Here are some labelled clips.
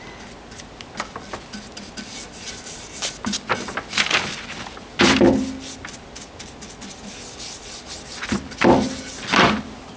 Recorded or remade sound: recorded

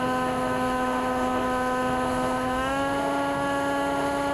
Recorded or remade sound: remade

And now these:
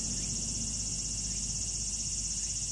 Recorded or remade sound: recorded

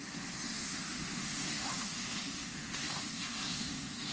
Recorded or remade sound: remade